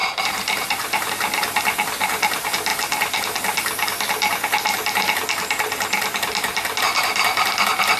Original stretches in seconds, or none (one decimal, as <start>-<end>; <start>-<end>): 1.1-8.0